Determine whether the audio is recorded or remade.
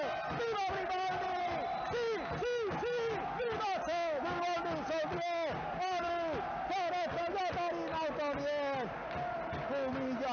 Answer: recorded